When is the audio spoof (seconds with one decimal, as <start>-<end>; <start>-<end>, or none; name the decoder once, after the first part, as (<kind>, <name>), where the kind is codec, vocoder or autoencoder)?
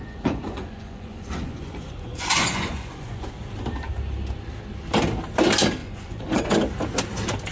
0.0-3.3 (vocoder, Vocos); 5.8-6.4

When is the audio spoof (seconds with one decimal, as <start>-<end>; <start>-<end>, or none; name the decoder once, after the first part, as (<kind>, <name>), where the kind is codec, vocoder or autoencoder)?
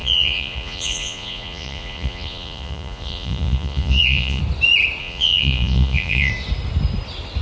0.0-4.4 (vocoder, Vocos); 5.0-6.3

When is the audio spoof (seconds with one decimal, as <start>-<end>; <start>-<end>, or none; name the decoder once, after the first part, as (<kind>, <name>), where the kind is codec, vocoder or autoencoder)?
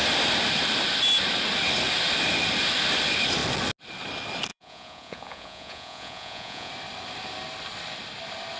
4.5-6.7 (vocoder, Vocos)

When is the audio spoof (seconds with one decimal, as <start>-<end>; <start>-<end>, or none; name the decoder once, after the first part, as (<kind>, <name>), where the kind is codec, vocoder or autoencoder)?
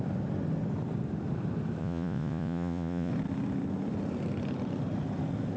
1.8-3.1 (vocoder, Vocos)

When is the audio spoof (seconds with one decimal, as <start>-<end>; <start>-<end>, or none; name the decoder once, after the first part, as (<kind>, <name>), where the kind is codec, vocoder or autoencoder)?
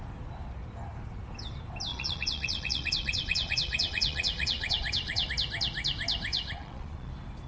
1.9-5.3 (vocoder, Vocos); 6.3-7.1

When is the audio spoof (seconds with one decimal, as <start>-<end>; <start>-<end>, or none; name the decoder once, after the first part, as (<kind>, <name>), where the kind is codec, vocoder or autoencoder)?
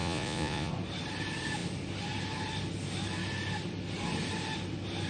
0.0-0.7 (vocoder, Vocos)